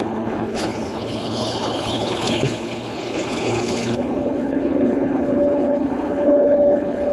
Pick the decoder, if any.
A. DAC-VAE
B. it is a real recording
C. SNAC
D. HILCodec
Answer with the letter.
D